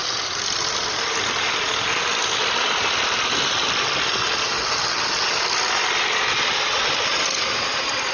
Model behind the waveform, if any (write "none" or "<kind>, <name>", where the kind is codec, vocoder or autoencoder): none